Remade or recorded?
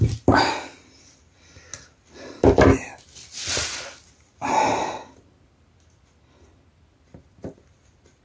recorded